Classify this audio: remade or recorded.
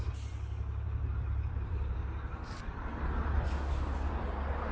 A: remade